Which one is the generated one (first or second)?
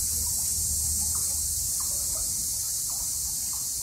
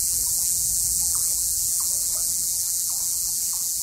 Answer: second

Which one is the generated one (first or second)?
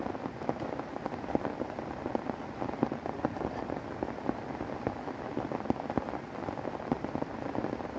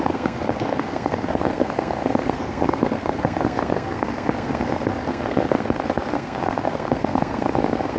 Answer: second